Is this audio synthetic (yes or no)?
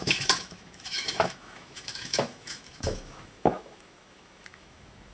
yes